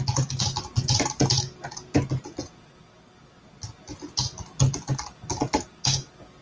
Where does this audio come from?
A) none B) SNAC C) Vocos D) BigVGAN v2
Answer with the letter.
A